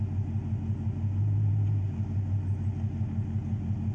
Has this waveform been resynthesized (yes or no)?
no